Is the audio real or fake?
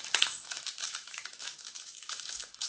fake